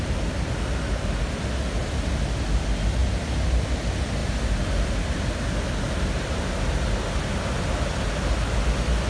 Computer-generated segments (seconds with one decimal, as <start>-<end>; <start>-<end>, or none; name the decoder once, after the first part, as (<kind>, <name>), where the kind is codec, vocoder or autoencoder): none